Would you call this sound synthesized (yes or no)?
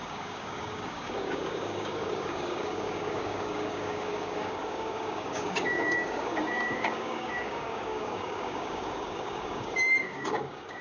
yes